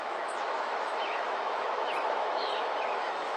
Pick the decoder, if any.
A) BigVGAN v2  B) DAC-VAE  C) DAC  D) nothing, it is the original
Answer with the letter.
B